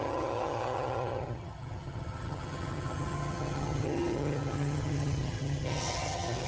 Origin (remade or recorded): remade